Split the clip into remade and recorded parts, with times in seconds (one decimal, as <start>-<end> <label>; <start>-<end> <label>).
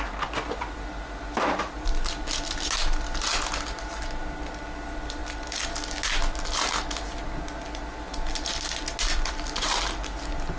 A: 0.0-10.6 recorded